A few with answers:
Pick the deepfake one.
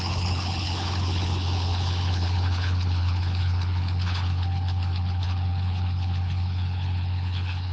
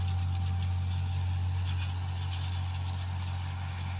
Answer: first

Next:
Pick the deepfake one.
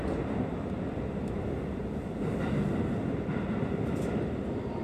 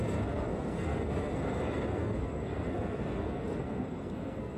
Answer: second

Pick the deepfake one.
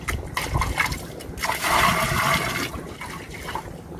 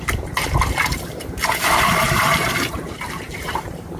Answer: second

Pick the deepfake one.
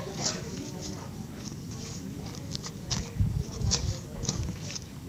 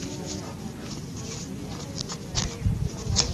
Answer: first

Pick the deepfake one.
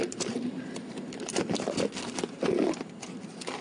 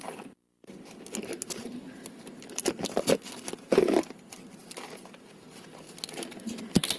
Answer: first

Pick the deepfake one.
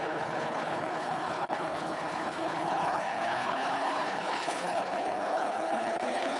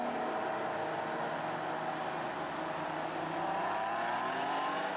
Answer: first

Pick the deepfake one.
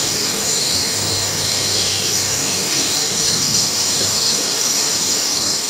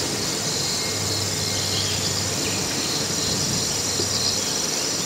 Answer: first